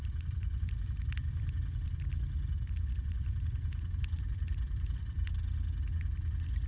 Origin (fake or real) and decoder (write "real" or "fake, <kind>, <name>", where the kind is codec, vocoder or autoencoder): real